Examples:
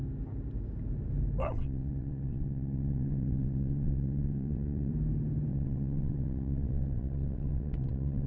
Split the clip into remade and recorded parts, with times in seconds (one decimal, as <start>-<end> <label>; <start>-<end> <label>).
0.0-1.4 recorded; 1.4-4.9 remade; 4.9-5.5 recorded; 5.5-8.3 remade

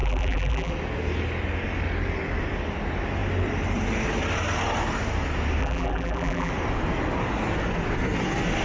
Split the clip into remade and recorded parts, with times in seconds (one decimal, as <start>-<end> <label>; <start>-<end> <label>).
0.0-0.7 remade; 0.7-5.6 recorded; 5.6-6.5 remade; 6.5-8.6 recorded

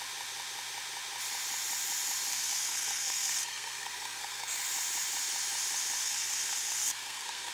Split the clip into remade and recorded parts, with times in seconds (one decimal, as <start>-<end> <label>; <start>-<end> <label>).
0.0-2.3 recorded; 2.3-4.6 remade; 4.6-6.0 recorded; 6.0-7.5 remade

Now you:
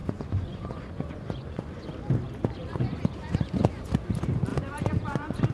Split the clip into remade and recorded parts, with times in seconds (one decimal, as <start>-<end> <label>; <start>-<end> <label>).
0.0-1.9 remade; 1.9-2.6 recorded; 2.6-3.9 remade; 3.9-4.5 recorded; 4.5-5.5 remade

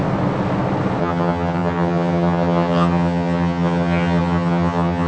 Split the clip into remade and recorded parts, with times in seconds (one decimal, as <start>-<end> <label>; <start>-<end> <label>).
0.0-1.0 recorded; 1.0-5.1 remade

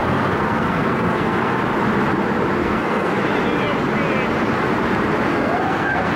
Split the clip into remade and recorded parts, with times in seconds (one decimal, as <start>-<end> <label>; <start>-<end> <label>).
0.0-1.6 remade; 1.6-2.6 recorded; 2.6-3.2 remade; 3.2-5.3 recorded; 5.3-6.2 remade

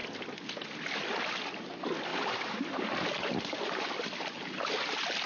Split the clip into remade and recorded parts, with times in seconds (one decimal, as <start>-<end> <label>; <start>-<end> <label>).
0.0-5.3 recorded